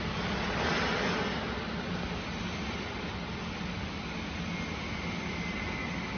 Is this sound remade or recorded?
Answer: recorded